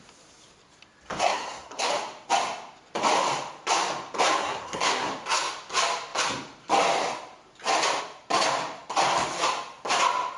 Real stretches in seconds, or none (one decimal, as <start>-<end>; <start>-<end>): 0.0-1.2; 1.9-4.4; 5.1-10.4